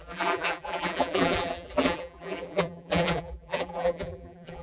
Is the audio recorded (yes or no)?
no